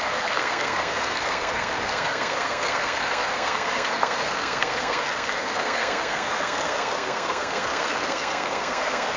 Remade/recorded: remade